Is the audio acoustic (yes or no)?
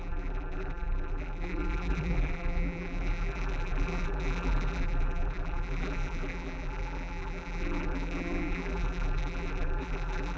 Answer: no